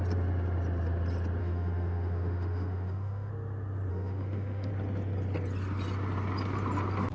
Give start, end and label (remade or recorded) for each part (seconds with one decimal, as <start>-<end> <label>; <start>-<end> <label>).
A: 0.0-1.4 recorded; 1.4-3.3 remade; 3.3-3.9 recorded; 3.9-4.7 remade; 4.7-7.1 recorded